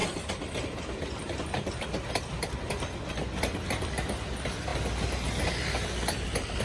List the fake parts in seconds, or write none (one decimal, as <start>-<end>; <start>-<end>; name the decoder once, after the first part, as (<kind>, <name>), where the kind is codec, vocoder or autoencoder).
none